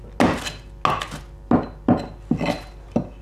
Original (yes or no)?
yes